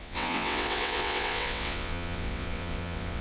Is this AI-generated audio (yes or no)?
yes